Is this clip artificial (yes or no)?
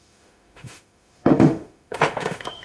yes